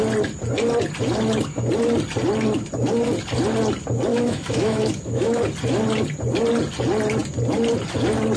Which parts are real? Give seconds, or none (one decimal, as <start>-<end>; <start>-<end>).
0.0-4.1; 5.4-8.4